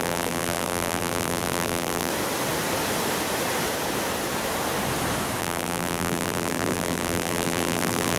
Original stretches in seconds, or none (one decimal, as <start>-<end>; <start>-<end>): 2.1-5.4